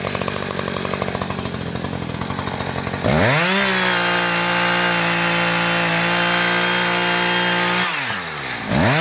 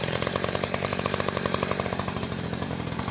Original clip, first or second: first